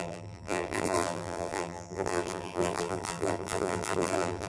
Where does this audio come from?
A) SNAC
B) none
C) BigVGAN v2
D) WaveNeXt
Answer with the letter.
C